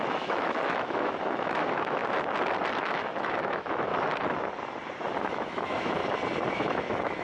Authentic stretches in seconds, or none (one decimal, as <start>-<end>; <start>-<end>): 2.0-2.7; 3.9-5.2; 6.0-6.5